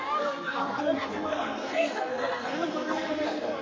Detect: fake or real fake